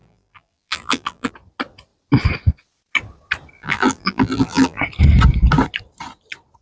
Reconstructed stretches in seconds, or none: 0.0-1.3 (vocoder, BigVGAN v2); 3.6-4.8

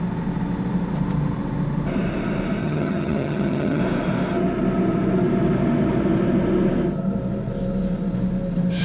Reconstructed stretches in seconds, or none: 2.6-3.8 (vocoder, HiFi-GAN)